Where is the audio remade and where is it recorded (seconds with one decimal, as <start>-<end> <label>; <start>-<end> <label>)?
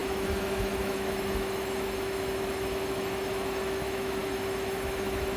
0.0-5.4 remade